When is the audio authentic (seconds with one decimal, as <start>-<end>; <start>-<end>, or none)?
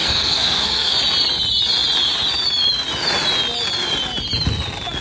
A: 1.0-5.0